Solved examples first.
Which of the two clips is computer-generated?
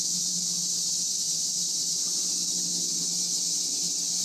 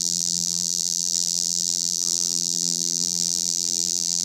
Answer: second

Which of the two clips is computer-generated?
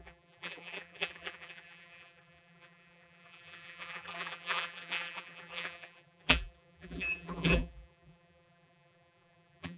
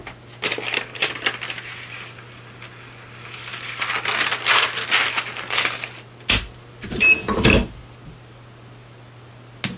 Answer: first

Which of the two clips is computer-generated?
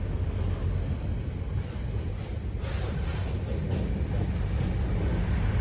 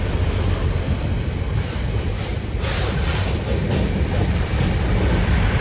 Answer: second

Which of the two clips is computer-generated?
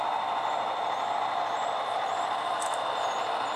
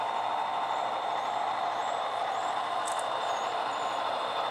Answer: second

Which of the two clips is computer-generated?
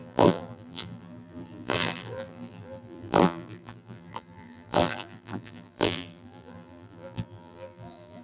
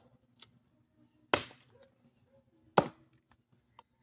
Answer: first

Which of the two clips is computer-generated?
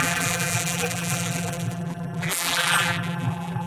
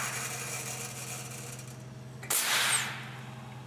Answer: first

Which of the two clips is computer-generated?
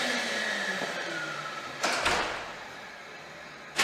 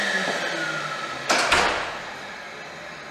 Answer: first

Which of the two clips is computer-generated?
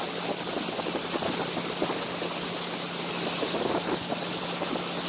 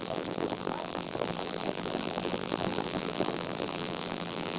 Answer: second